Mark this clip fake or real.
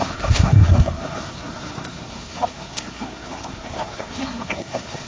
fake